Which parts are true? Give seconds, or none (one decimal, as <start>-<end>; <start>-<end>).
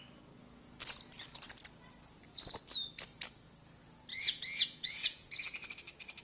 0.0-4.1; 5.3-6.2